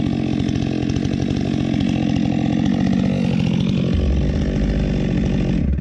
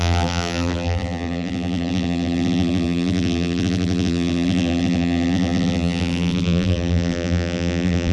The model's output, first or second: second